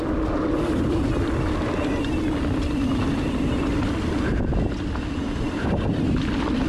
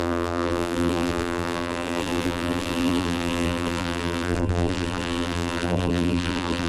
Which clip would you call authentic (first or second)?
first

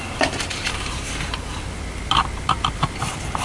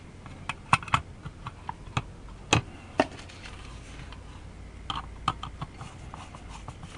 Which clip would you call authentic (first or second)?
second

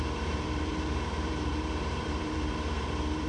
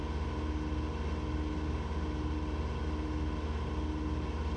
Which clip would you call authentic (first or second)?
second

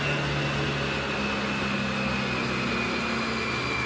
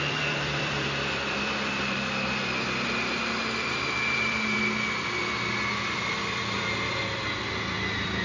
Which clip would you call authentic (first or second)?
first